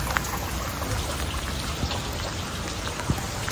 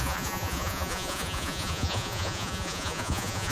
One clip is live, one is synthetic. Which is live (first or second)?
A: first